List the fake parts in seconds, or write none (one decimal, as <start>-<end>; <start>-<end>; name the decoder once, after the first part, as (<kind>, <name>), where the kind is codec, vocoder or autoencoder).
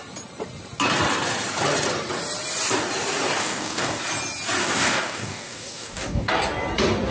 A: 3.4-4.0 (codec, DAC); 4.6-6.3